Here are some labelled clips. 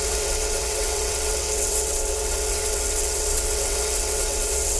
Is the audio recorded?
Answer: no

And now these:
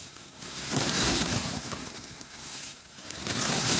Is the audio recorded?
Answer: no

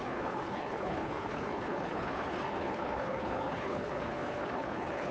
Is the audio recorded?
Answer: no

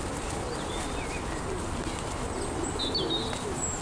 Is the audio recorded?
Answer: yes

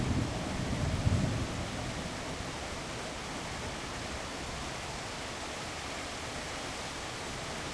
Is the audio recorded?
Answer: yes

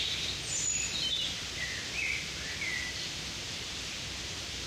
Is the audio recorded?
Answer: no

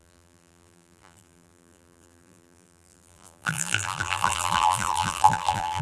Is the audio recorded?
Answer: no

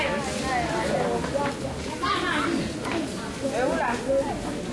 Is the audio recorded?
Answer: yes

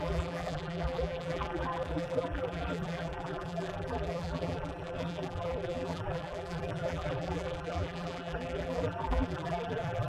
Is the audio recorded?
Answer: no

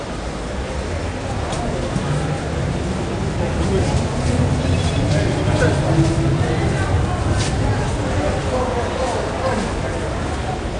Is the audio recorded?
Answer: yes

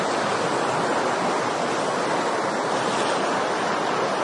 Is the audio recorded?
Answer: yes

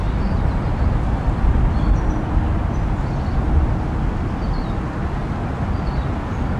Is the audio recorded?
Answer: yes